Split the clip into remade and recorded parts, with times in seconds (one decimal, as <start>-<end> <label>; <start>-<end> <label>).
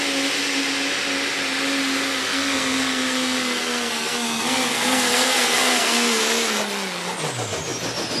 0.0-2.2 recorded; 2.2-6.2 remade; 6.2-8.2 recorded